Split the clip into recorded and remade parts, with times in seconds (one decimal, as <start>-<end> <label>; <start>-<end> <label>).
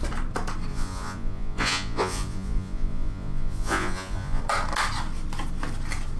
0.0-0.7 recorded; 0.7-4.4 remade; 4.4-6.2 recorded